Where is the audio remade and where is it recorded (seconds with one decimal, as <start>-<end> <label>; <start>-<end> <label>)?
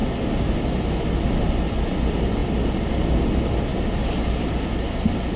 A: 0.0-5.4 recorded